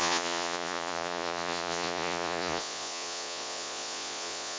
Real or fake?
fake